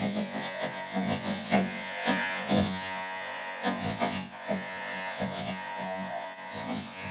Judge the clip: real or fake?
fake